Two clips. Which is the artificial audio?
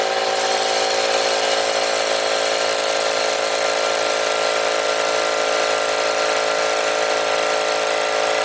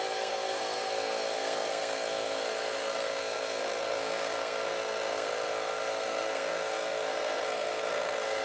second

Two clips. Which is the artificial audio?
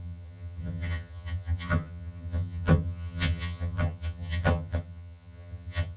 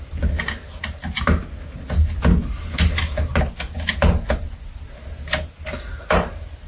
first